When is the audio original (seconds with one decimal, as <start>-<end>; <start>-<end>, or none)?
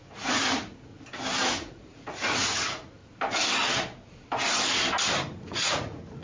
0.9-1.5; 3.0-5.4